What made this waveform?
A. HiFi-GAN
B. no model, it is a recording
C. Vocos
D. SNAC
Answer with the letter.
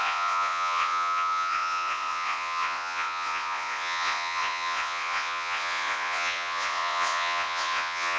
C